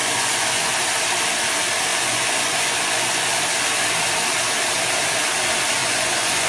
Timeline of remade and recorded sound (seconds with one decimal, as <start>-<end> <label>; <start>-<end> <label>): 0.0-0.7 remade; 0.7-1.9 recorded; 1.9-3.4 remade; 3.4-5.8 recorded; 5.8-6.5 remade